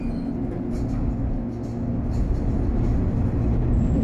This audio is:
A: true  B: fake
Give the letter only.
A